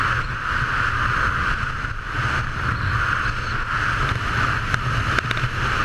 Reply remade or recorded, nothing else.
recorded